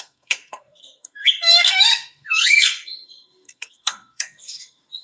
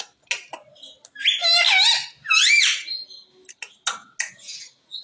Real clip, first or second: second